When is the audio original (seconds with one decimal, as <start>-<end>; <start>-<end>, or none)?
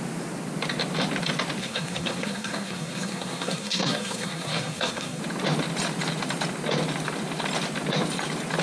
0.0-1.6; 5.2-8.6